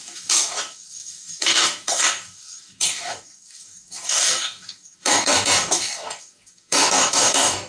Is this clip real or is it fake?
fake